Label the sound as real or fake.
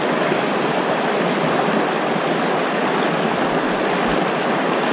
real